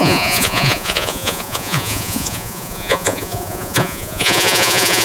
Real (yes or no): no